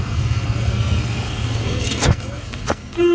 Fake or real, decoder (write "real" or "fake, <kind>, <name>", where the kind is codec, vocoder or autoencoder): fake, codec, SNAC